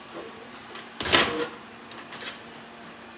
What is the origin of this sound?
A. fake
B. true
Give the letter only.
B